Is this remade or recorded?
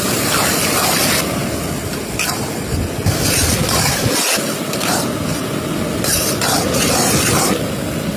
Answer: recorded